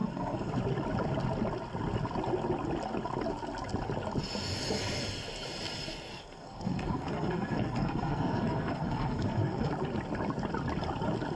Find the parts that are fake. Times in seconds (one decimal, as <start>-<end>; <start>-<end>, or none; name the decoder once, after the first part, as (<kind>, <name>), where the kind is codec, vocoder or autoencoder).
0.0-0.5 (codec, SNAC); 6.1-9.7